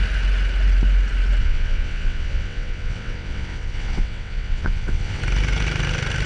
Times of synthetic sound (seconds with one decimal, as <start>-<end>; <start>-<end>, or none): 1.4-5.2